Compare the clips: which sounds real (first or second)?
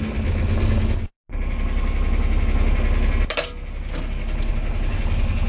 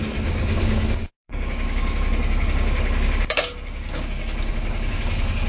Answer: first